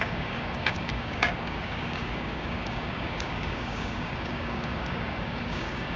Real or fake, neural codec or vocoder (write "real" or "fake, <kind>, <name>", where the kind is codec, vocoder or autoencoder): fake, codec, DAC